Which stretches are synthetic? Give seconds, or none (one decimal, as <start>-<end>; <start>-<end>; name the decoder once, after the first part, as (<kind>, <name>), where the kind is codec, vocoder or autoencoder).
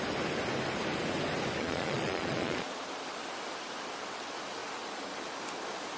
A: 1.6-2.8 (vocoder, Vocos)